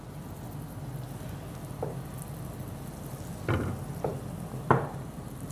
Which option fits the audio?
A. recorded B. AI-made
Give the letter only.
A